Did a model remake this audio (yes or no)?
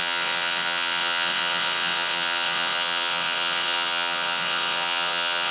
yes